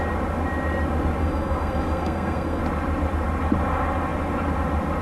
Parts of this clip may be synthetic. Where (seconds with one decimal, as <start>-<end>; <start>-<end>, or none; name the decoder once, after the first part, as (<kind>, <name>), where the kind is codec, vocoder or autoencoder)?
1.2-2.6 (codec, SNAC)

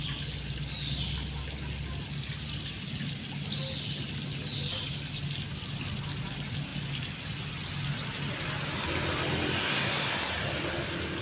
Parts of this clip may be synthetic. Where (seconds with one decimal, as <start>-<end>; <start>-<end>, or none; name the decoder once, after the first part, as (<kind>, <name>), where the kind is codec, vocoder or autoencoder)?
9.6-10.3 (codec, SNAC)

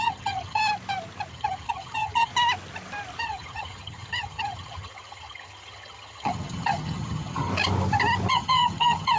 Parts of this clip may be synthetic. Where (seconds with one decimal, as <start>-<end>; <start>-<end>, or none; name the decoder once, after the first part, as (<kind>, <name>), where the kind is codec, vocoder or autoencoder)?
0.0-0.6 (vocoder, HiFi-GAN); 1.3-2.3; 3.2-7.5; 8.3-9.2

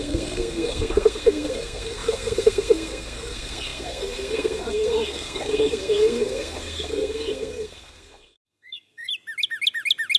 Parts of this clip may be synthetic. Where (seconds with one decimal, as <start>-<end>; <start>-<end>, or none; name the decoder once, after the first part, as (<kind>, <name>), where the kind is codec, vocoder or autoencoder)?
0.0-9.1 (codec, SNAC)

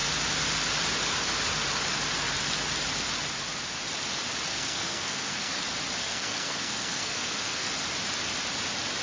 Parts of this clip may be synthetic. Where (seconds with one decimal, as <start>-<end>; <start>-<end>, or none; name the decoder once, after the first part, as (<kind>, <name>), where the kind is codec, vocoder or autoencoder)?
4.5-5.6 (codec, SNAC); 6.0-7.7